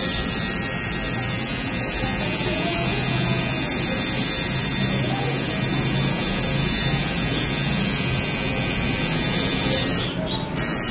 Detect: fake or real real